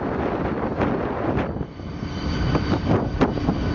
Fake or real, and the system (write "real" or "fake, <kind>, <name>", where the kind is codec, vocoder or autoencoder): real